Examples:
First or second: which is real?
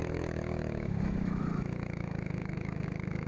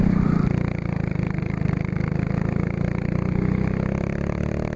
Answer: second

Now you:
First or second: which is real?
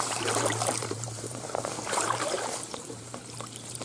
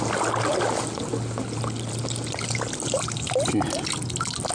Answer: second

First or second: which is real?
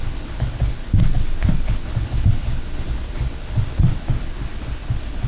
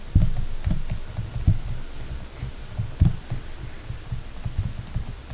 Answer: second